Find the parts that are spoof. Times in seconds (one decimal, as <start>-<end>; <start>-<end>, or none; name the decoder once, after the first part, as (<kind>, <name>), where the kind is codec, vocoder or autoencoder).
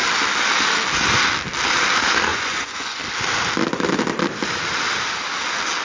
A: 2.3-3.0 (vocoder, Vocos)